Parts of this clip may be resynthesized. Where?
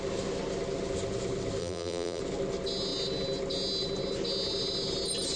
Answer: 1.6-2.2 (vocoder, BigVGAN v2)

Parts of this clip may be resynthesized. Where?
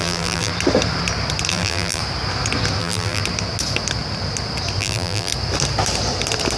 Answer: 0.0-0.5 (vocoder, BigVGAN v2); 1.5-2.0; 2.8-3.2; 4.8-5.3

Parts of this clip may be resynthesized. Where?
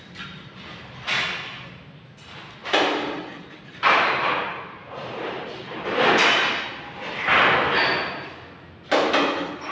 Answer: 2.6-6.4 (vocoder, BigVGAN v2)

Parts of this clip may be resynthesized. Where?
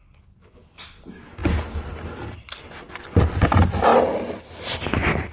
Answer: none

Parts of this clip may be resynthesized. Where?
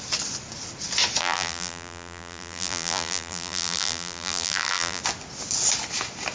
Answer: 1.2-5.0 (vocoder, BigVGAN v2)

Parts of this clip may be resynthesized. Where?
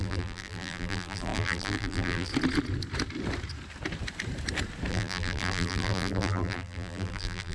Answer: 0.0-2.3 (vocoder, BigVGAN v2); 4.9-7.5